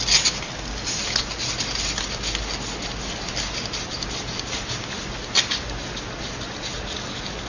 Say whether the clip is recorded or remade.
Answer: recorded